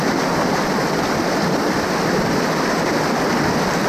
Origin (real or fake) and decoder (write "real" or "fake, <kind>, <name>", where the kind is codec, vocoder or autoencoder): fake, vocoder, BigVGAN v2